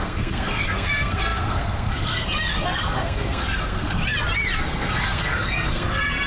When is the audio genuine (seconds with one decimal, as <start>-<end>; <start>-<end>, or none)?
4.0-4.6